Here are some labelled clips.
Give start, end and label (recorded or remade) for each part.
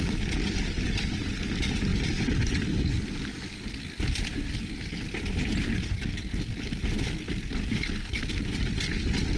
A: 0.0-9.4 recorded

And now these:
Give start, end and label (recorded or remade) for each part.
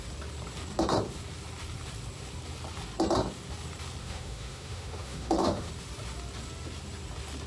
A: 0.0-4.0 recorded; 4.0-5.7 remade; 5.7-7.5 recorded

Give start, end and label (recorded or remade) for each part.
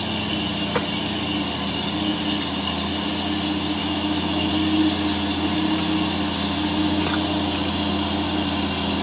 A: 0.0-3.8 recorded; 3.8-4.5 remade; 4.5-9.0 recorded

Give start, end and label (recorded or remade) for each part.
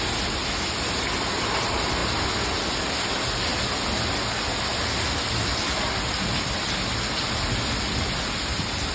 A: 0.0-8.9 recorded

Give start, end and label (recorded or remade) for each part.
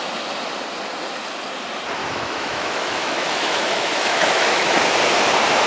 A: 0.0-2.0 recorded; 2.0-4.8 remade; 4.8-5.7 recorded